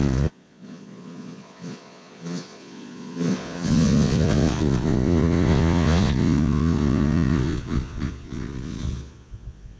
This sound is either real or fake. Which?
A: fake